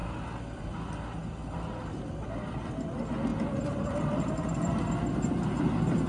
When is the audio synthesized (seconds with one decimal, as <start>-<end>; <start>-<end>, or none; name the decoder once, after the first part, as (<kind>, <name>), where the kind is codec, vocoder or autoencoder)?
3.3-4.9 (vocoder, BigVGAN v2)